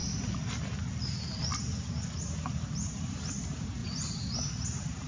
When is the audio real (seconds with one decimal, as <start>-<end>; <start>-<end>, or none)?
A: 0.0-3.1; 3.8-4.5